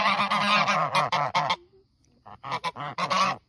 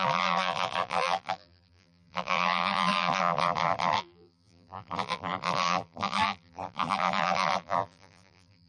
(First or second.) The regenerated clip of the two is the second